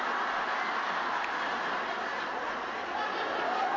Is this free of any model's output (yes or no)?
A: yes